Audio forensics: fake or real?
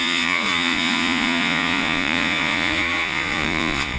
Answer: fake